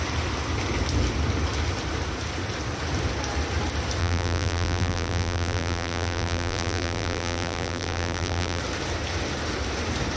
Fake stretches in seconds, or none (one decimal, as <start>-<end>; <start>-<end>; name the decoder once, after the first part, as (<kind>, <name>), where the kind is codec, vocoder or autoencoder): 4.0-8.6 (vocoder, BigVGAN v2)